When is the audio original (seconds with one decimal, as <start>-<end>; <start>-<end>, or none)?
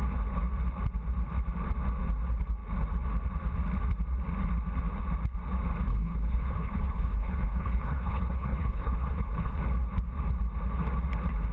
0.0-5.9; 9.6-11.5